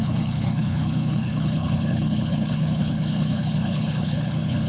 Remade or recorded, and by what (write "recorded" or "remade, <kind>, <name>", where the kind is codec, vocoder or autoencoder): remade, codec, HILCodec